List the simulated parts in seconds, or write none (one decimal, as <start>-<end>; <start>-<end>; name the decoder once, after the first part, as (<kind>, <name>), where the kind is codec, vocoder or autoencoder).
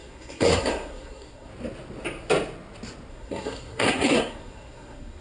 0.0-1.5 (codec, SNAC); 3.1-5.2